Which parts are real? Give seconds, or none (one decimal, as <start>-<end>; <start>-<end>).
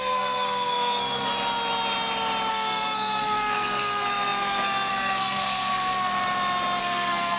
1.3-2.5; 6.1-6.8